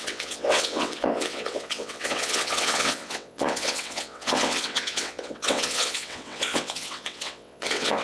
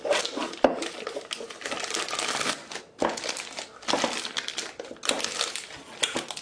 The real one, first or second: second